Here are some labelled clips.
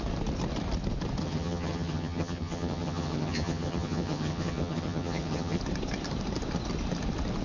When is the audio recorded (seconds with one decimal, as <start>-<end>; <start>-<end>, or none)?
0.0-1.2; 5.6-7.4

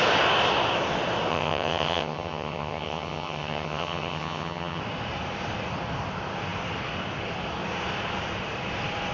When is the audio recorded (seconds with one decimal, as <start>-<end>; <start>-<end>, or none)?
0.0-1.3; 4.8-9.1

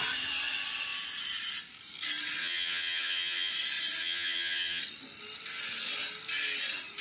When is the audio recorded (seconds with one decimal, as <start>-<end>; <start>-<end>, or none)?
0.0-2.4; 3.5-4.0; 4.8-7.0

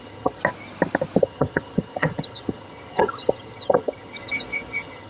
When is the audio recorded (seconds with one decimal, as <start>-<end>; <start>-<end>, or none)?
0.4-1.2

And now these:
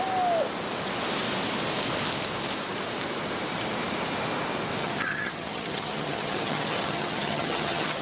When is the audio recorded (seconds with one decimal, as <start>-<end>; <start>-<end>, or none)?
0.0-4.8

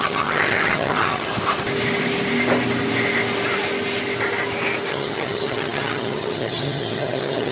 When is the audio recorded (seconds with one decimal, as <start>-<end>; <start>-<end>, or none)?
1.3-4.9

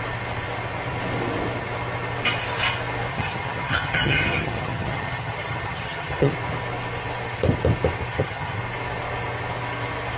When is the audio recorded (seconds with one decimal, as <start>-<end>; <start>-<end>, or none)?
0.0-3.1; 6.3-8.1; 8.6-10.2

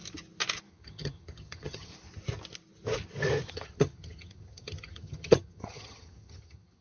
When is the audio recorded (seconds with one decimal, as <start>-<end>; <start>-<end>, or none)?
0.0-0.7; 1.9-3.5